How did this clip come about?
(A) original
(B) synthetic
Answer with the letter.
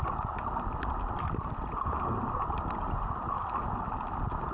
A